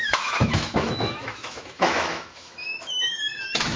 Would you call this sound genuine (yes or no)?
no